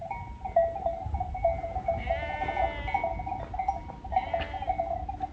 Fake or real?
real